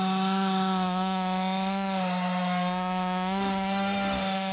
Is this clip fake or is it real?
fake